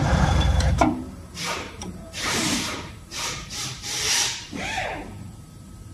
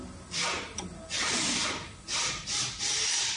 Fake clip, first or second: first